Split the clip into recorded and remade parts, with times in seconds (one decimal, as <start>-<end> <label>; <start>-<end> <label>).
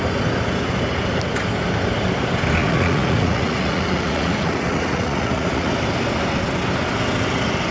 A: 0.0-2.6 recorded; 2.6-5.7 remade; 5.7-7.7 recorded